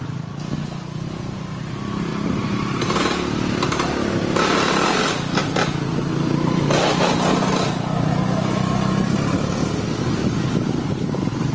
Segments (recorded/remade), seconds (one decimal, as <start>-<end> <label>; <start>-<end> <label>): 0.0-11.5 recorded